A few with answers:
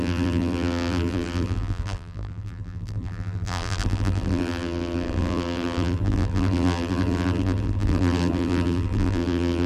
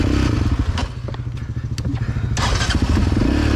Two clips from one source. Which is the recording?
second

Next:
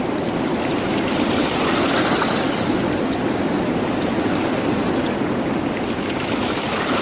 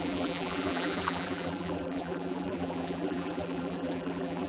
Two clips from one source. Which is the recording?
first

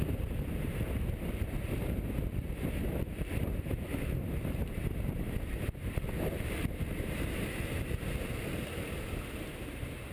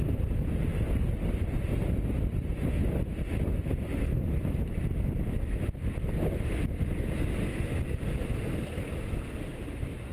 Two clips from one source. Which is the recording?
second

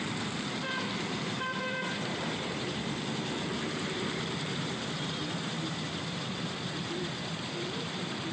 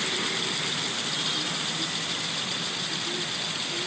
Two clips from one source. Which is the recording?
second